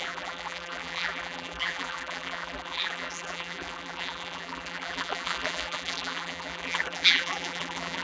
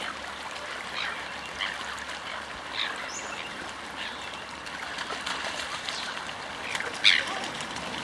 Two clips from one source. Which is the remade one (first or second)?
first